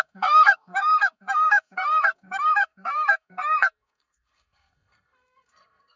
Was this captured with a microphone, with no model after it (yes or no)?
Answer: no